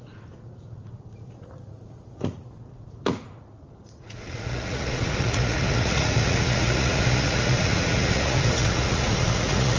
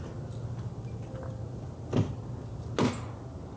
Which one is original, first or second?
second